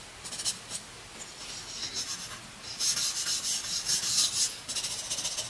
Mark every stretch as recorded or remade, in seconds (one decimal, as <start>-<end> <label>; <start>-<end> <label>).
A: 0.0-5.5 recorded